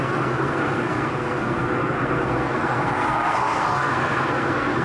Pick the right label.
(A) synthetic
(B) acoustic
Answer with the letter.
A